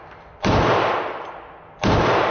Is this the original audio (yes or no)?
yes